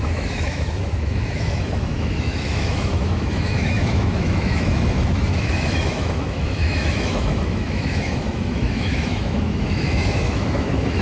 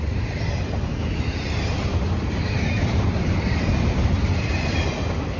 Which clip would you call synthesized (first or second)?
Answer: first